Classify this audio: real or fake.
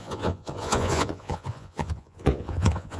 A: fake